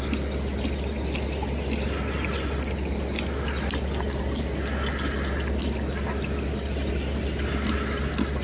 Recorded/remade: recorded